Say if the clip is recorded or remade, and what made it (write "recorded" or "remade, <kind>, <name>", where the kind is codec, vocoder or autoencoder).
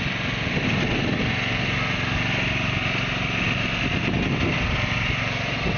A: recorded